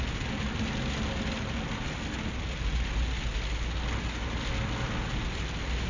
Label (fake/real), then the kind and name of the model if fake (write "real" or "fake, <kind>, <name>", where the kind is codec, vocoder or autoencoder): real